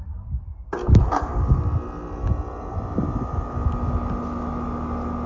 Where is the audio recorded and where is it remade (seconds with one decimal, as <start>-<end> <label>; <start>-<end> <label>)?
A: 0.0-5.3 recorded